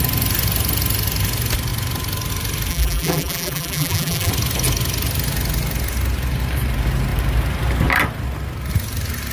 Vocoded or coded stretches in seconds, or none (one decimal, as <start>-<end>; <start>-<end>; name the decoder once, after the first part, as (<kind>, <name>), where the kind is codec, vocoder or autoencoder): 2.7-4.3 (vocoder, BigVGAN v2)